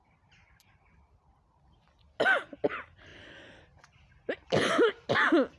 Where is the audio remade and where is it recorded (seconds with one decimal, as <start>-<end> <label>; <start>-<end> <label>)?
0.0-5.6 recorded